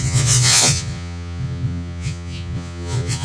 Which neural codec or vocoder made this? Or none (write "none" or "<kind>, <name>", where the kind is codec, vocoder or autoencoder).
vocoder, Vocos